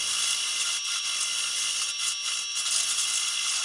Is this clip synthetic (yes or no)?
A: no